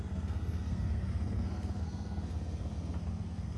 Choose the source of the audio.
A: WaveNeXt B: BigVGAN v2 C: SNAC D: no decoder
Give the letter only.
C